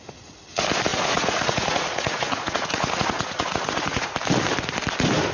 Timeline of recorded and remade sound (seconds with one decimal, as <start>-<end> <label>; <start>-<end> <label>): 0.0-0.9 recorded; 0.9-4.1 remade; 4.1-5.3 recorded